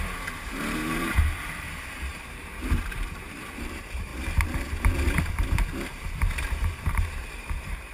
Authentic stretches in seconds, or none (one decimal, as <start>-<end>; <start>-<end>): 4.1-5.3